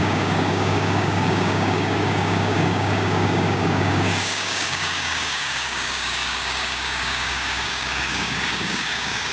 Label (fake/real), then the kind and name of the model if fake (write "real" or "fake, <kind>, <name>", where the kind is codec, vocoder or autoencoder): fake, codec, DAC